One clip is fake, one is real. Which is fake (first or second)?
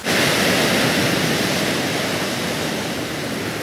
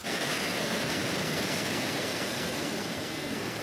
second